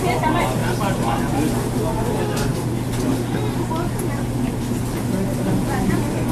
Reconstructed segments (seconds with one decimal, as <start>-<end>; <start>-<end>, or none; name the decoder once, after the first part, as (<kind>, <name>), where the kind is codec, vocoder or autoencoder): none